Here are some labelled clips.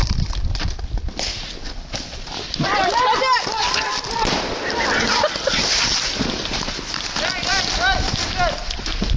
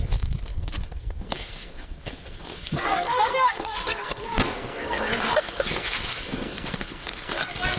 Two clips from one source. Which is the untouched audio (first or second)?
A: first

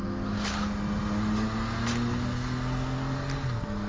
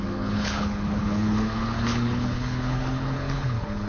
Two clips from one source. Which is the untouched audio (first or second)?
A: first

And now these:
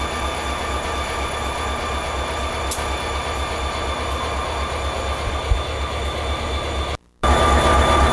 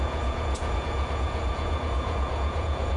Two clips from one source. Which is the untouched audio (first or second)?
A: first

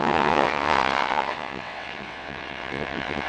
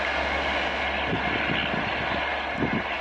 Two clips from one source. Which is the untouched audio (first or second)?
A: second